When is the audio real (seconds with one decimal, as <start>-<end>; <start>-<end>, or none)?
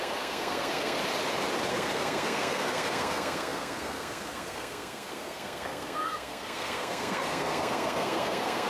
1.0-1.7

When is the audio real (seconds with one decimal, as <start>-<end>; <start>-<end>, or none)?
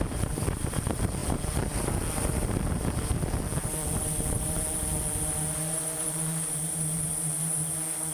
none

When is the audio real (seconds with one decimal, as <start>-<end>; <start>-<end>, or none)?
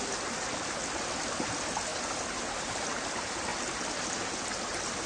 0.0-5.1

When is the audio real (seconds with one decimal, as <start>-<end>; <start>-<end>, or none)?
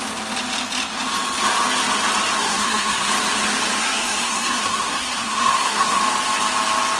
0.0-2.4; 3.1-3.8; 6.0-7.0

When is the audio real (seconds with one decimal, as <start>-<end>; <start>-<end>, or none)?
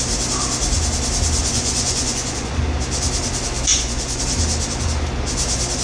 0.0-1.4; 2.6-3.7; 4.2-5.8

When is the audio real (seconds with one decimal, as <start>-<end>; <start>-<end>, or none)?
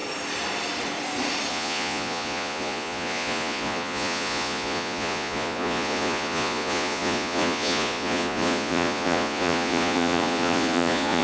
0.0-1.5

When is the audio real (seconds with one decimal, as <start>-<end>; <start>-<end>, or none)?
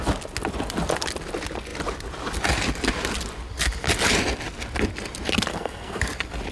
0.0-5.5; 6.0-6.5